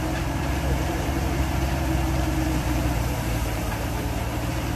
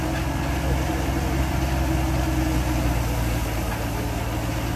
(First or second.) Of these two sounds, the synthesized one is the first